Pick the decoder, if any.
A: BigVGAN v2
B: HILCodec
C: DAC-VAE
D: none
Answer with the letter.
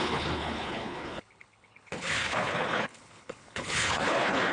B